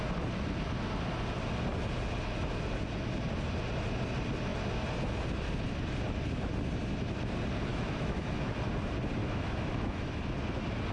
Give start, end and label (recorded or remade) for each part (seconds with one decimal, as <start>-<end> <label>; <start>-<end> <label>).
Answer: 0.0-7.7 recorded; 7.7-8.5 remade; 8.5-9.2 recorded; 9.2-10.2 remade; 10.2-10.9 recorded